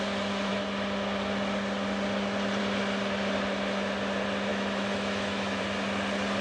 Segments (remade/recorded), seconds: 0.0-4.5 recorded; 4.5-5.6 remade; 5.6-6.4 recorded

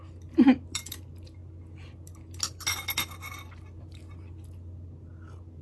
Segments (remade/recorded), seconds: 0.0-5.6 recorded

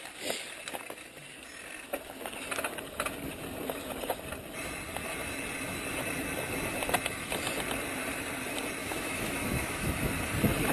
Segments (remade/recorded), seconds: 0.0-8.8 recorded; 8.8-9.9 remade; 9.9-10.7 recorded

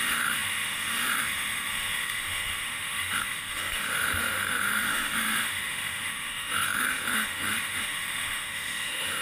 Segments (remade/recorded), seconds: 0.0-9.2 remade

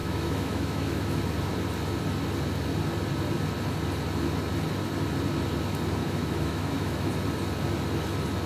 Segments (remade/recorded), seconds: 0.0-1.2 remade; 1.2-6.0 recorded; 6.0-7.1 remade; 7.1-8.5 recorded